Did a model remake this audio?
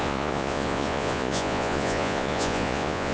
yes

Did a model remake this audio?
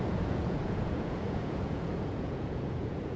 yes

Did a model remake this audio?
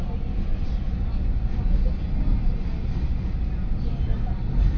no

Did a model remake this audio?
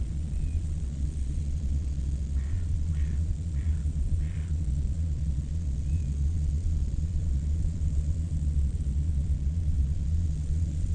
yes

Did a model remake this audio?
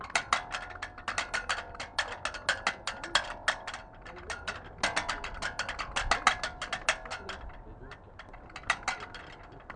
no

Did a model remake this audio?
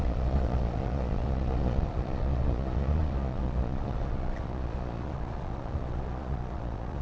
yes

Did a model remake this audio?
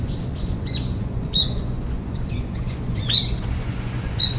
yes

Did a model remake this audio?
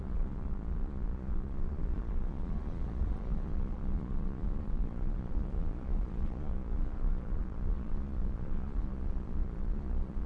yes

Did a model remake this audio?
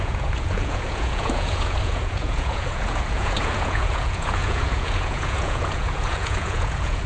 yes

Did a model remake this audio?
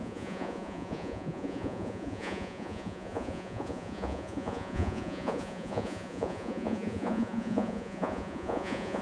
yes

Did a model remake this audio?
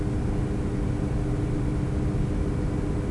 no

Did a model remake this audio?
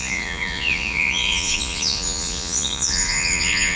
yes